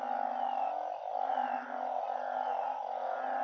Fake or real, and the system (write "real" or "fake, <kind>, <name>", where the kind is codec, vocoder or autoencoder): real